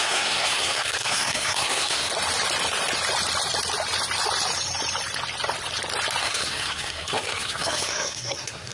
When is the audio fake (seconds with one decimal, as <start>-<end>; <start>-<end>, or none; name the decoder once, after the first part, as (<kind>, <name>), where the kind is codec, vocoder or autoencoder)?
0.0-2.1 (codec, SNAC); 6.2-8.7